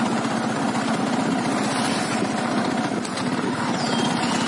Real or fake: real